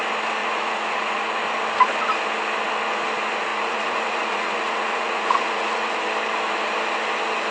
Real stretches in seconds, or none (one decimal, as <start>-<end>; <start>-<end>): 0.0-0.4; 1.4-3.5; 5.9-7.5